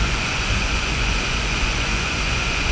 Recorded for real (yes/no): no